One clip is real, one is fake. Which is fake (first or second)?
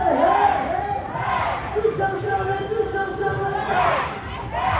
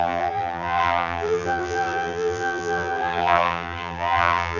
second